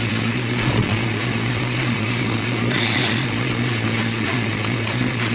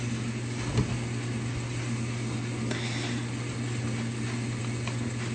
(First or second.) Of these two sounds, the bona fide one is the second